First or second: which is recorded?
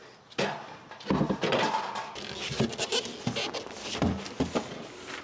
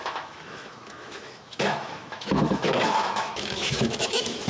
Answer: first